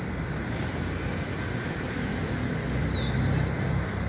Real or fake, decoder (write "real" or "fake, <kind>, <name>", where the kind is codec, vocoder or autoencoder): real